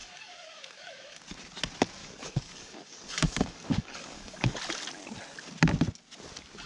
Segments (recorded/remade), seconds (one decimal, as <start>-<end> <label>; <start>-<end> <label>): 0.0-1.2 remade; 1.2-2.0 recorded; 2.0-4.6 remade; 4.6-6.7 recorded